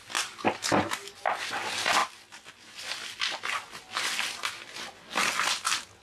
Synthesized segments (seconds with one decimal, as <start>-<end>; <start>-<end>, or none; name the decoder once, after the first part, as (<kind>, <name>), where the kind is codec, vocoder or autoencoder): 0.0-1.5 (vocoder, BigVGAN v2); 2.0-2.8